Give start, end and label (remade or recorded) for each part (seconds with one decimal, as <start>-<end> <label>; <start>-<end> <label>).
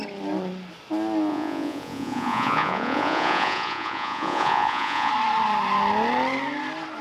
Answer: 0.0-1.3 recorded; 1.3-5.1 remade; 5.1-7.0 recorded